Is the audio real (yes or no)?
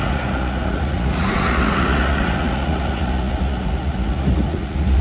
no